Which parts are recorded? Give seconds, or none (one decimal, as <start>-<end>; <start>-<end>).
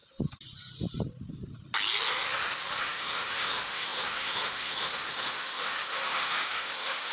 0.0-2.8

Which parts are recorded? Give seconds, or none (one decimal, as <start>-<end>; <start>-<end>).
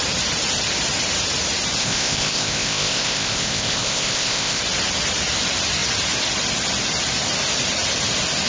0.0-1.8; 4.6-8.5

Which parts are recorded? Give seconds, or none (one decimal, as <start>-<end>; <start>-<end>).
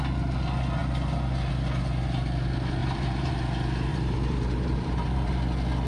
0.0-2.8; 3.3-3.9; 5.3-5.9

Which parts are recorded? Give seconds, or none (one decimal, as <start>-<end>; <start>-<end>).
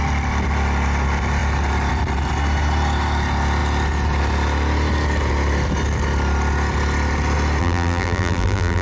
0.0-7.6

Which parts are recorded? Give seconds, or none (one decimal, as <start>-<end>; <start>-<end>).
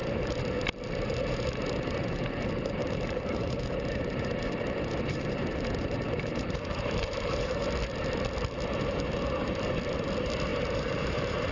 0.0-2.8; 7.7-10.5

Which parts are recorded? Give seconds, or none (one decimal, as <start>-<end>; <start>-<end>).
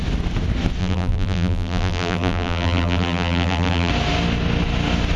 0.0-0.8; 3.9-5.2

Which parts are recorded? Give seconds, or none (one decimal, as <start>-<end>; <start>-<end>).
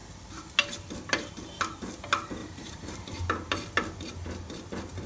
0.0-2.4; 3.2-5.1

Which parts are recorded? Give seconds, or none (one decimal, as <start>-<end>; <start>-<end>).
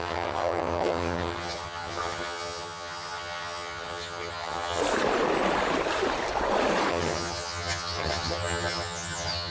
4.8-6.9